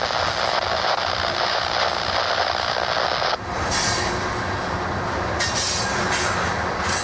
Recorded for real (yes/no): yes